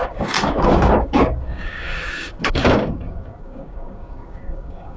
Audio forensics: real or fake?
fake